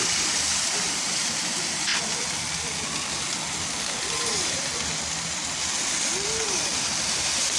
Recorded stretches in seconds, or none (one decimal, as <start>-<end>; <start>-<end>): 1.9-4.1; 4.7-7.1